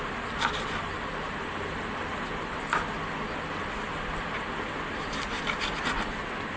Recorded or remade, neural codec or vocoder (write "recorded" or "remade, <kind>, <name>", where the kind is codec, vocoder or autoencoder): recorded